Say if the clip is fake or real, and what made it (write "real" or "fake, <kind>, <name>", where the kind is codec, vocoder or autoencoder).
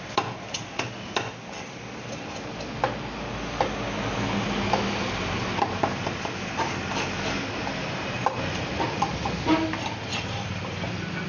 real